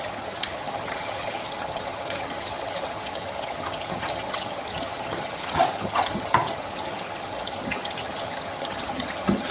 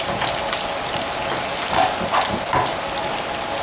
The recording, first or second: second